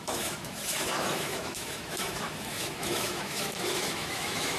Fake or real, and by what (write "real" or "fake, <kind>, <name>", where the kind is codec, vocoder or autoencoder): fake, autoencoder, DAC-VAE